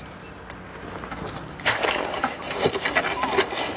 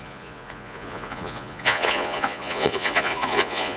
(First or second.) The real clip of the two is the first